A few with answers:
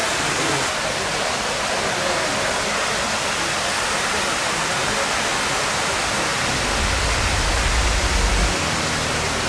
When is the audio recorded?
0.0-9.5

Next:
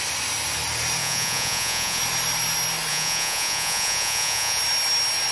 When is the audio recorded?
0.0-1.0; 2.0-2.9; 4.6-5.3

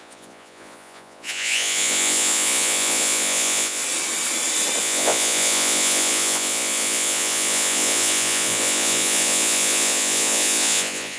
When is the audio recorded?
3.8-4.8

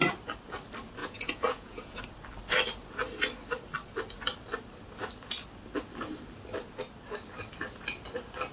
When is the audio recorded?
0.0-1.0; 2.0-8.5

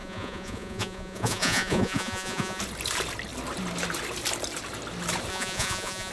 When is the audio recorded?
2.6-5.3